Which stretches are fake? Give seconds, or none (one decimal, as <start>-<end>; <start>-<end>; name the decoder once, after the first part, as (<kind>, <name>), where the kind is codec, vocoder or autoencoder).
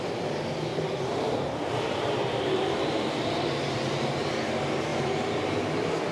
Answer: 0.7-4.4 (vocoder, BigVGAN v2); 4.9-5.4